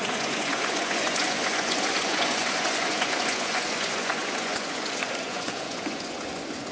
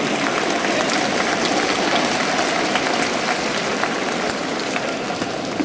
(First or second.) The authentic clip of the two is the second